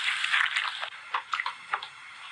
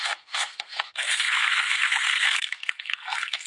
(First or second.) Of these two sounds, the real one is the first